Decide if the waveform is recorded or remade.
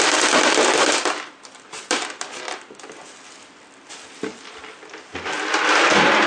recorded